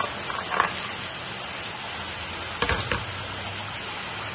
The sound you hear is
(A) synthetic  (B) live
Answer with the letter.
B